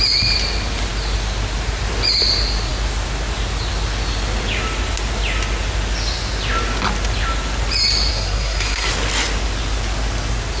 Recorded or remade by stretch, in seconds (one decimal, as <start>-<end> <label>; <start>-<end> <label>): 0.0-8.1 recorded; 8.1-8.9 remade; 8.9-10.6 recorded